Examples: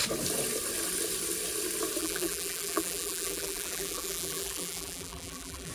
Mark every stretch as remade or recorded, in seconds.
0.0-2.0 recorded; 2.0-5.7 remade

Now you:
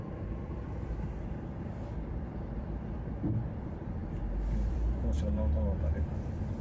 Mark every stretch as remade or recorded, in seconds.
0.0-4.0 remade; 4.0-4.7 recorded; 4.7-6.6 remade

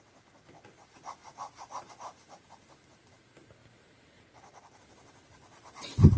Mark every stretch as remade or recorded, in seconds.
0.0-1.2 recorded; 1.2-1.9 remade; 1.9-3.6 recorded; 3.6-6.2 remade

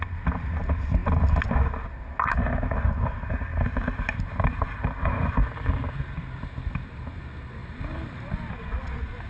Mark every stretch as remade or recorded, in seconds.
0.0-3.5 recorded; 3.5-5.9 remade; 5.9-7.6 recorded; 7.6-8.5 remade; 8.5-9.3 recorded

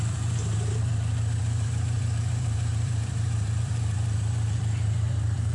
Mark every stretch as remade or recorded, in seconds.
0.0-0.9 remade; 0.9-1.4 recorded; 1.4-5.5 remade

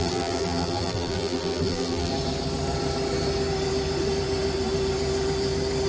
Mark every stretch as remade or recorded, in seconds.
0.0-2.1 remade; 2.1-5.9 recorded

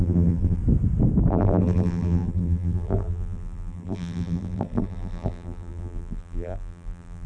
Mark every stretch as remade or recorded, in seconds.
0.0-0.6 remade; 0.6-1.3 recorded; 1.3-7.3 remade